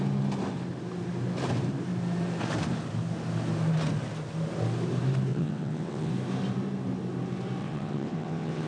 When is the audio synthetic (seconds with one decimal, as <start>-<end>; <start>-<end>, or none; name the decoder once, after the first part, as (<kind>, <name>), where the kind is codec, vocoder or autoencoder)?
5.3-6.1 (vocoder, WaveNeXt); 7.6-8.7